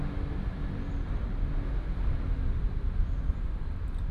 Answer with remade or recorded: recorded